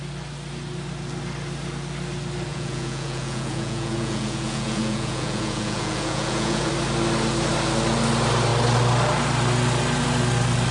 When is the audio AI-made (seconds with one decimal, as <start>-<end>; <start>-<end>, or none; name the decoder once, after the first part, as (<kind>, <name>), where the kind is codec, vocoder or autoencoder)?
2.5-6.7 (vocoder, Vocos)